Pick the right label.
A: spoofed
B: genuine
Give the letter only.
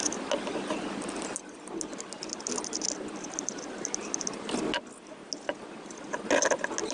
B